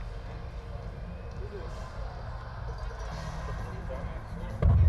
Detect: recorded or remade recorded